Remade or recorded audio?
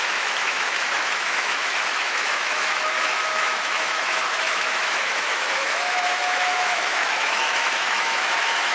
remade